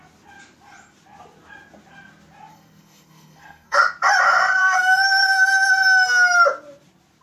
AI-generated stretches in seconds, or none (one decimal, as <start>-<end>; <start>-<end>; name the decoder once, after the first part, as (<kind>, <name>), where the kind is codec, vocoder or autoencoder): 2.5-3.8 (codec, SNAC); 4.6-5.7